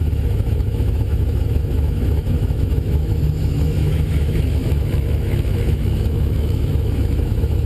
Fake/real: fake